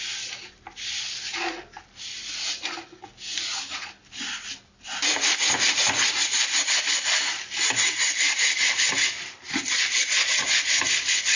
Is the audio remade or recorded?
recorded